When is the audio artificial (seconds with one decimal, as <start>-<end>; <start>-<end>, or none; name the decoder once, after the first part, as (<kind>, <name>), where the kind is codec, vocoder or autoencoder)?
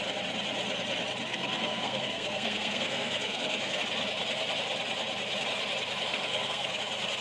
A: 1.3-3.8 (codec, SNAC); 6.1-6.8